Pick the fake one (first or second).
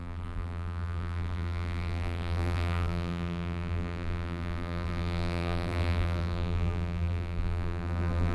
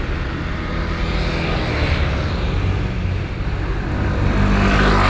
first